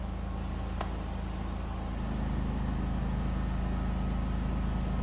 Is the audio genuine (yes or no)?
yes